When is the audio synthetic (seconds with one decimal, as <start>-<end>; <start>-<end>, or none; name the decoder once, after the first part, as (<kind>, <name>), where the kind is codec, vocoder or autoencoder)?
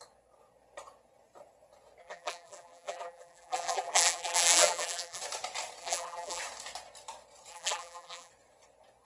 2.0-5.2 (vocoder, BigVGAN v2); 5.8-6.4; 7.5-8.3